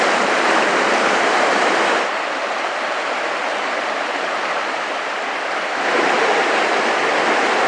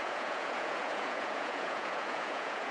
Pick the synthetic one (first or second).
second